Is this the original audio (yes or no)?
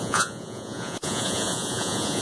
no